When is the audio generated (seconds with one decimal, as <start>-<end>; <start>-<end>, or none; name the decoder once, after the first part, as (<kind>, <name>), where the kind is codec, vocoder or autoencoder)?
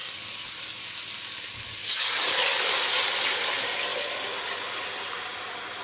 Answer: 0.0-0.8 (codec, DAC); 1.8-2.7